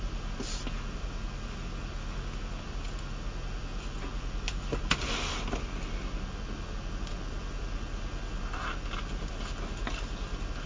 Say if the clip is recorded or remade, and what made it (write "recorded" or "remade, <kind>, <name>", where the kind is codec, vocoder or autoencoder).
recorded